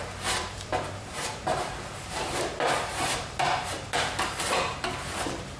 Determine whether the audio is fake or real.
fake